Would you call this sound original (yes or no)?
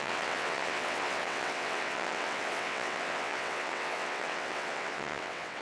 no